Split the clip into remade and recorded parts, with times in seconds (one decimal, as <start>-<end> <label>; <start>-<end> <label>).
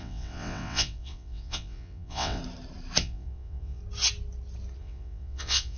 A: 0.0-2.4 remade; 2.4-3.0 recorded; 3.0-3.8 remade; 3.8-4.8 recorded; 4.8-5.8 remade